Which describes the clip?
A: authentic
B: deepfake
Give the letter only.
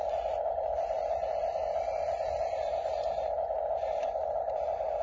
A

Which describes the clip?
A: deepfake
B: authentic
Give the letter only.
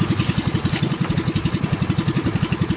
B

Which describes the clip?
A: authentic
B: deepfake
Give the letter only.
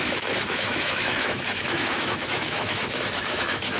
B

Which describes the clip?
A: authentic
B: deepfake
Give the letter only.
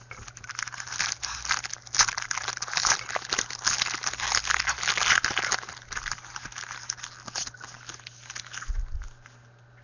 A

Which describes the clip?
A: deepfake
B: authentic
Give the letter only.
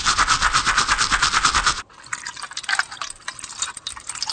B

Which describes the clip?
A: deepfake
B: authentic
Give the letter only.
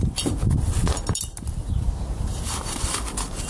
B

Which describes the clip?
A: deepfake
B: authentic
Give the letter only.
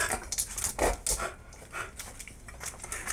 B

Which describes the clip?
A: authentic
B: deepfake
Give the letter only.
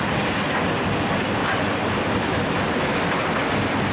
A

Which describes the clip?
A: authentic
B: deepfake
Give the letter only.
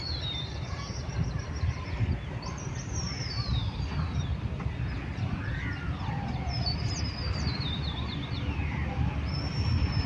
B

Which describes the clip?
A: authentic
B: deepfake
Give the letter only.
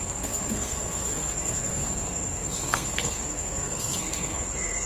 B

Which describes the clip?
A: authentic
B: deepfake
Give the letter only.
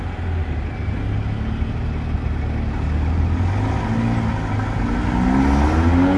A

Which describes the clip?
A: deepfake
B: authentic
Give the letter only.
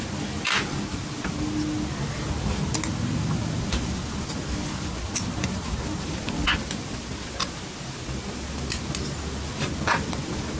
B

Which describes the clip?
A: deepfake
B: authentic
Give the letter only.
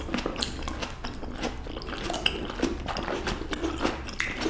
B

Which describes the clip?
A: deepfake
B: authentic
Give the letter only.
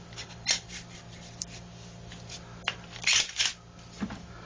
B